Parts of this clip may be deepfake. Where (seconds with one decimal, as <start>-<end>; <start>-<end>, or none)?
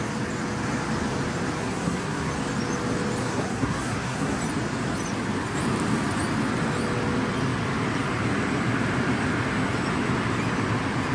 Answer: 1.6-2.3; 3.2-4.4